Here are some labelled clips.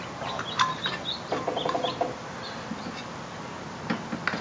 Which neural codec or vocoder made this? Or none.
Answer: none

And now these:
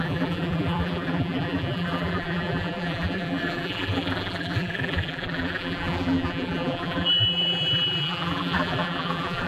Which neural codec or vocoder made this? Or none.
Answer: vocoder, BigVGAN v2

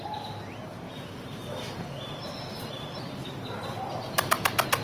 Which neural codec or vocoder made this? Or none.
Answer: vocoder, BigVGAN v2